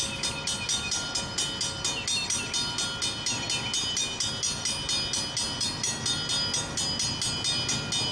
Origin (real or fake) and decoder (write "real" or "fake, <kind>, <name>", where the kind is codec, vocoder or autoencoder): real